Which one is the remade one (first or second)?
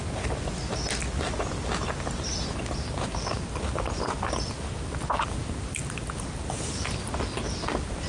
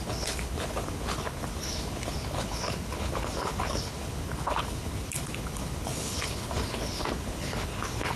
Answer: second